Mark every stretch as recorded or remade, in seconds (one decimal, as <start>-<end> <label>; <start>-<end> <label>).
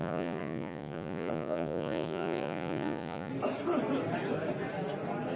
0.0-3.3 remade; 3.3-5.4 recorded